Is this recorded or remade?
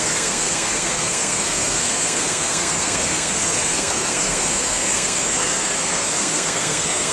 remade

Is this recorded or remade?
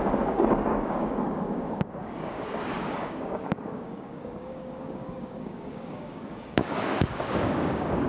remade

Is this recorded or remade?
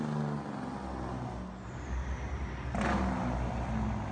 recorded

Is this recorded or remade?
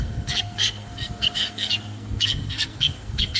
remade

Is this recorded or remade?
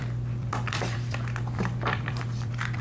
remade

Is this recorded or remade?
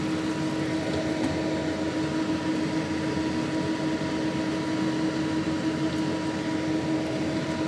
recorded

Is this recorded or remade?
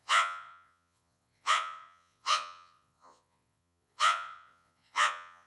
remade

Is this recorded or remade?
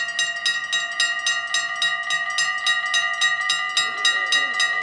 recorded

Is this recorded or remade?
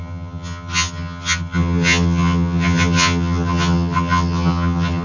remade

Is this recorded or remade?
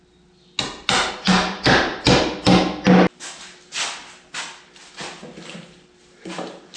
recorded